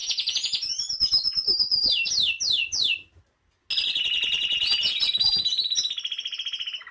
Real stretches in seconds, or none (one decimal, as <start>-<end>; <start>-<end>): 0.7-6.9